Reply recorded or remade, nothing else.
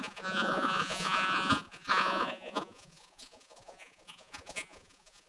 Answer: remade